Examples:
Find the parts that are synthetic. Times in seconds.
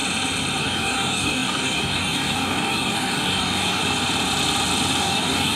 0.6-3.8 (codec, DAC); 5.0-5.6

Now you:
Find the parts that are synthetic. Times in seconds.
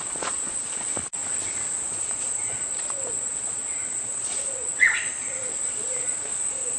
0.0-1.2 (vocoder, Vocos); 1.8-6.8